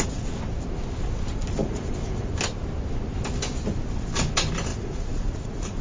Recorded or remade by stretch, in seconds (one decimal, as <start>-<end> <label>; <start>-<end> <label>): 0.0-1.6 recorded; 1.6-2.3 remade; 2.3-4.7 recorded; 4.7-5.8 remade